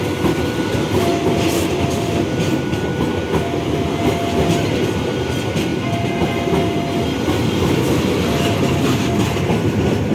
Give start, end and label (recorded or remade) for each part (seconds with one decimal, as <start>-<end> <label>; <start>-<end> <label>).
0.0-10.1 recorded